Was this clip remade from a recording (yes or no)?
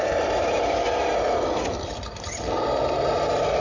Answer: no